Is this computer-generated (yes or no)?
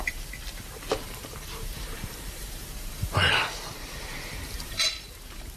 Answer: yes